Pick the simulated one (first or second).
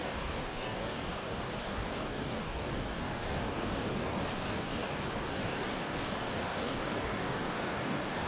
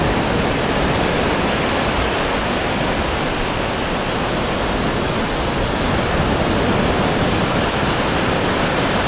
first